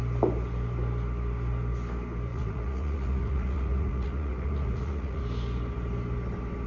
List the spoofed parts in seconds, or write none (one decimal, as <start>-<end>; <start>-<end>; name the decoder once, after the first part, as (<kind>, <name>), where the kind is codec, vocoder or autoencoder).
2.3-5.2 (vocoder, Vocos)